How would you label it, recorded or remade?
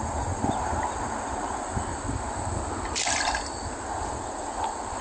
recorded